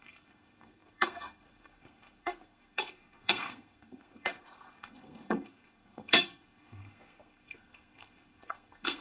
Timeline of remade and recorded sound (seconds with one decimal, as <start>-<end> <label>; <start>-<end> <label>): 0.0-9.0 remade